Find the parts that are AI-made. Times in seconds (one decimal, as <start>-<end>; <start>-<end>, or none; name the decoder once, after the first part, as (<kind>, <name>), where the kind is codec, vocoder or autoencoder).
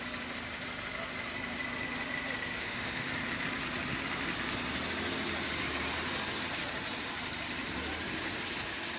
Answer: 2.6-3.1 (autoencoder, DAC-VAE)